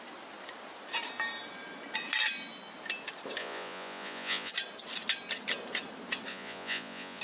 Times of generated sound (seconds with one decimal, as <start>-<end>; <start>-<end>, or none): 3.4-4.5; 6.3-7.2